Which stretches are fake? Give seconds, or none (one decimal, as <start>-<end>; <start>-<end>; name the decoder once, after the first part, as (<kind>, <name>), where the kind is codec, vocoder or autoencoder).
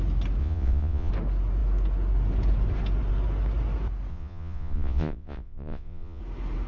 0.4-1.1 (vocoder, Vocos); 4.1-6.2